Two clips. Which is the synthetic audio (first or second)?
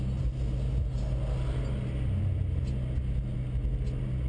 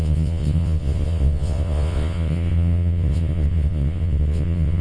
second